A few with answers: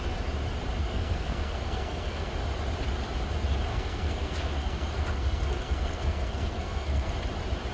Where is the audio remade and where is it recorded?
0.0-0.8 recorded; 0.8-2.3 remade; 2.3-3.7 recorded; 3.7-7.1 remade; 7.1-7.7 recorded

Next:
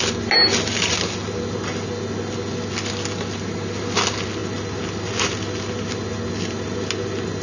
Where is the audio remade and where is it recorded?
0.0-7.4 recorded

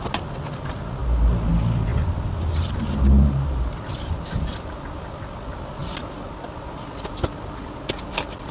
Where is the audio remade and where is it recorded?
0.0-8.5 recorded